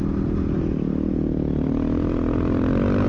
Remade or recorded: recorded